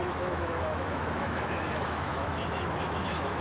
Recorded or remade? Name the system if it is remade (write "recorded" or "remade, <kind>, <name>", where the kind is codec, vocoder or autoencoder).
remade, autoencoder, DAC-VAE